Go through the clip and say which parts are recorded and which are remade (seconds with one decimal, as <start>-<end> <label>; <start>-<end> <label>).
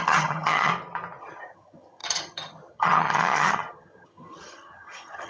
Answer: 0.0-0.7 remade; 0.7-1.2 recorded; 1.2-5.3 remade